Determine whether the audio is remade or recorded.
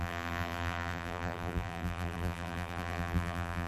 remade